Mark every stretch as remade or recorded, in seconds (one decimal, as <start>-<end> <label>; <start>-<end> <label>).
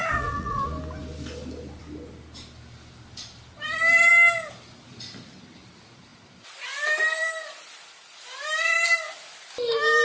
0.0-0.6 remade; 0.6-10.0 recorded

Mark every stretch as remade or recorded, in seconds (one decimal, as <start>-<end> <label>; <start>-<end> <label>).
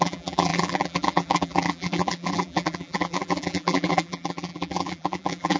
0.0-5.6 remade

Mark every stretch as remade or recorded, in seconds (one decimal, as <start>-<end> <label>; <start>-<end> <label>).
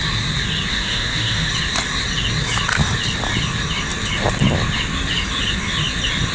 0.0-0.7 recorded; 0.7-1.5 remade; 1.5-6.3 recorded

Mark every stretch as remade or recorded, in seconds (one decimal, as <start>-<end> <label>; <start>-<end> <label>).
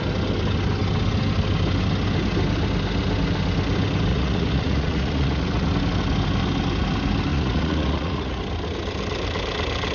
0.0-4.1 recorded; 4.1-5.7 remade; 5.7-7.3 recorded; 7.3-8.4 remade; 8.4-9.9 recorded